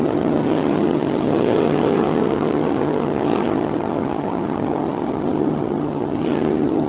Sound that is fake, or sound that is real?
fake